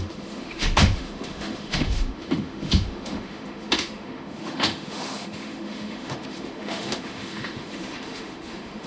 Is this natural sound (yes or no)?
no